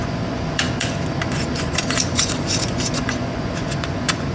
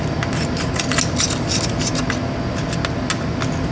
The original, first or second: second